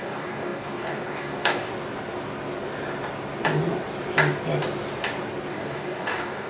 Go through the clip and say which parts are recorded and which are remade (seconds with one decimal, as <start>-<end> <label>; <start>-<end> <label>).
0.0-1.7 remade; 1.7-5.5 recorded; 5.5-6.5 remade